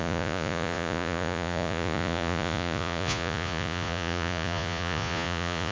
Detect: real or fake fake